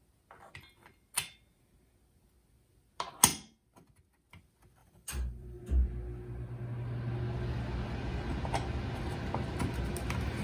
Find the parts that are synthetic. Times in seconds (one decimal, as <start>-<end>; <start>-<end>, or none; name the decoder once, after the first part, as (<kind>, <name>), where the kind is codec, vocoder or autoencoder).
4.8-5.6 (vocoder, BigVGAN v2)